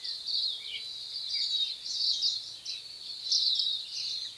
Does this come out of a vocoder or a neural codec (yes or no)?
no